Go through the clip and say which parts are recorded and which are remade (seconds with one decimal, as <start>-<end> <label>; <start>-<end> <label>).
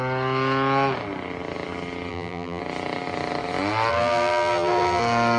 0.0-2.1 recorded; 2.1-2.6 remade; 2.6-3.9 recorded; 3.9-5.0 remade; 5.0-5.4 recorded